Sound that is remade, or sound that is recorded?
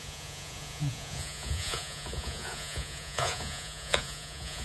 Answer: remade